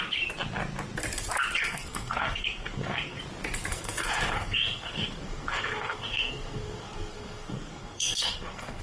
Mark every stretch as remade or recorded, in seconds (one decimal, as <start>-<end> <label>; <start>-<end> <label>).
0.0-1.6 recorded; 1.6-3.2 remade; 3.2-3.7 recorded; 3.7-8.8 remade